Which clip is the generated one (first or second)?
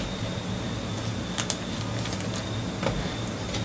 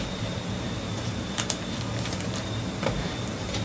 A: second